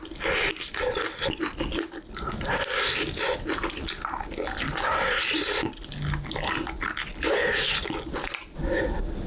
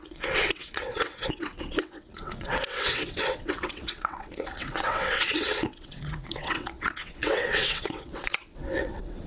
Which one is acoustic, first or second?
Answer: first